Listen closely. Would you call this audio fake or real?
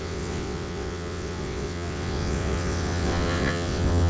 fake